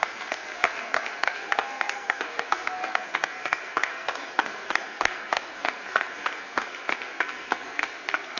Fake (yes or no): yes